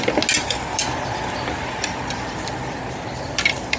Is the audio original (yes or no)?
yes